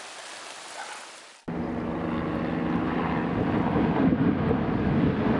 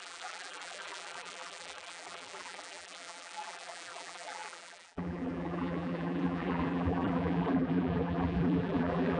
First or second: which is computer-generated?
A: second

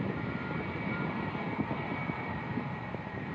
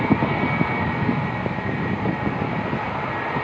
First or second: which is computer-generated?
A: first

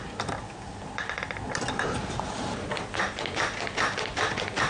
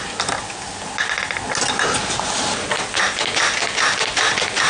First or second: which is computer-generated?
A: first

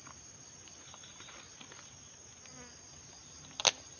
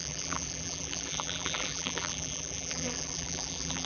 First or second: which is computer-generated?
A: second